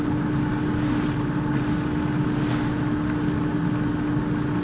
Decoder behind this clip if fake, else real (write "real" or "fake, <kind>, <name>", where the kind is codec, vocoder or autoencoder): real